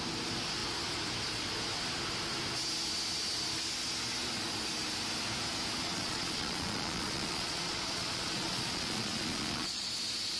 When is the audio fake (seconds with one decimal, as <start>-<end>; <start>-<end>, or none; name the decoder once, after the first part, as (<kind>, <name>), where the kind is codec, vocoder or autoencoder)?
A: 5.8-9.9 (vocoder, Vocos)